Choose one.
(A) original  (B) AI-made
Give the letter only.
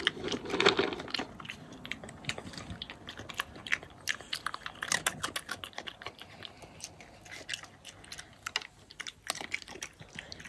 A